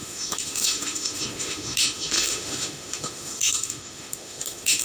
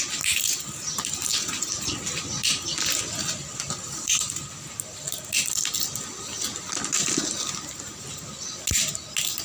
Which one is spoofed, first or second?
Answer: first